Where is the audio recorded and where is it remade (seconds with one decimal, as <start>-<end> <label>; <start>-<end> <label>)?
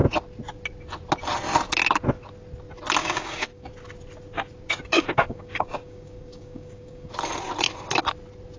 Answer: 0.0-3.0 recorded; 3.0-3.7 remade; 3.7-4.9 recorded; 4.9-7.1 remade; 7.1-8.6 recorded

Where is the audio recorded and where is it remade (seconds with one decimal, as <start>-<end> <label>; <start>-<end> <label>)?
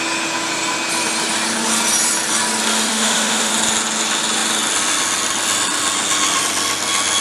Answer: 0.0-2.9 recorded; 2.9-3.5 remade; 3.5-7.2 recorded